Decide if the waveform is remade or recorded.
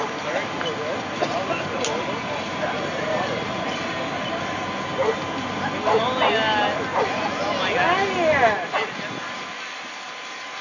recorded